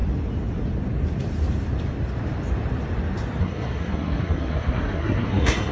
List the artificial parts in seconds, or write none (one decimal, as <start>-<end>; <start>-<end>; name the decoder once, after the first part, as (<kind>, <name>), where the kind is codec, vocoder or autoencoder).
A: 3.4-5.7 (codec, SNAC)